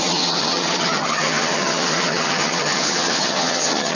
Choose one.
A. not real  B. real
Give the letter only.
A